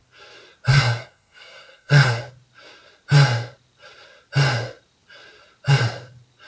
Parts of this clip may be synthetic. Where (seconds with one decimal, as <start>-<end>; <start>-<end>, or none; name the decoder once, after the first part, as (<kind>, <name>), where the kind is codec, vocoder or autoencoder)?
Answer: 0.7-2.2 (codec, SNAC)